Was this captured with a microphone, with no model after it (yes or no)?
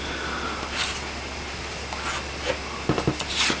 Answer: yes